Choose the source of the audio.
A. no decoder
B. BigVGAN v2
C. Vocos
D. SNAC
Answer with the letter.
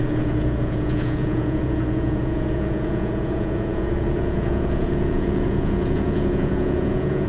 C